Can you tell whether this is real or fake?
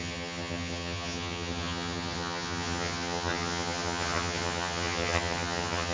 fake